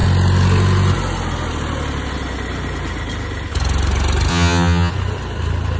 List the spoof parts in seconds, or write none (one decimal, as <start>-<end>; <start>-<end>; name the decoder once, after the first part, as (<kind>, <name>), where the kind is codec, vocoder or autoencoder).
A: 4.3-4.9 (vocoder, HiFi-GAN)

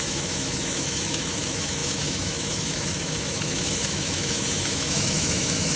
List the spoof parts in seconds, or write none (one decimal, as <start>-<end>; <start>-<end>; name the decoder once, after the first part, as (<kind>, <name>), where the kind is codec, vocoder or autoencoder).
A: 0.0-5.8 (autoencoder, DAC-VAE)